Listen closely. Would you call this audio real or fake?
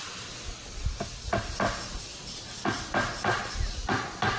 real